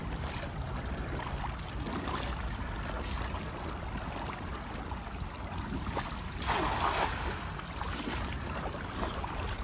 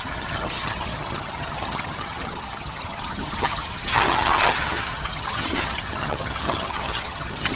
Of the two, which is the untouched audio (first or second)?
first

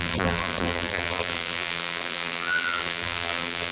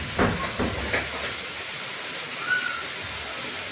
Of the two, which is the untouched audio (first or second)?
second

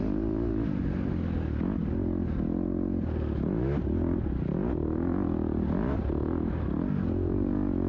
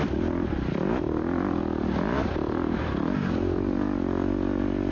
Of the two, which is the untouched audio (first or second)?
first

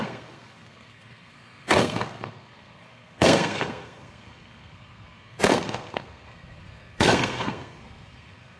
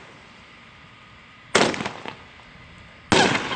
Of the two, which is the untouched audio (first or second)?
second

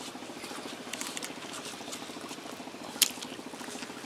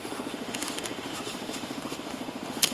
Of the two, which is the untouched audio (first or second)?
first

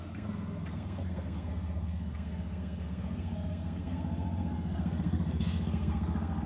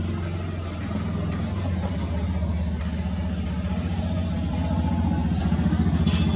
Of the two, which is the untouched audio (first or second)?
second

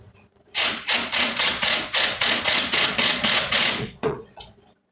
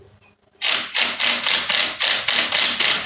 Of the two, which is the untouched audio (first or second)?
second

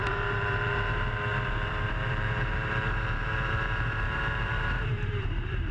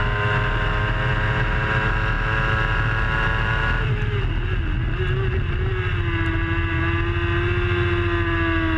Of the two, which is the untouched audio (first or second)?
second